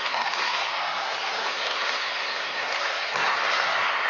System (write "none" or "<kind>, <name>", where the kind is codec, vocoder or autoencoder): codec, SNAC